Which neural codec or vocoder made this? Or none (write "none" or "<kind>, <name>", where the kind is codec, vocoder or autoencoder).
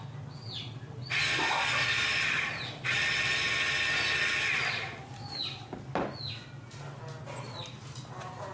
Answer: none